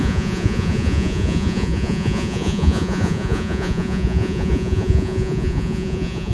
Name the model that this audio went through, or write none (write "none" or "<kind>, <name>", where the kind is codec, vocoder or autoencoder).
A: vocoder, Vocos